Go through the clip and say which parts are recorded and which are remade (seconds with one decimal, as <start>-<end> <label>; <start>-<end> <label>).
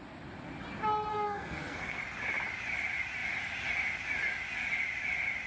0.0-1.1 recorded; 1.1-2.0 remade; 2.0-5.5 recorded